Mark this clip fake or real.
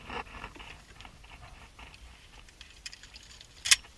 real